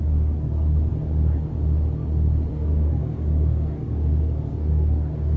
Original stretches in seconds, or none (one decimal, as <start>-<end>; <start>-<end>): 0.9-2.5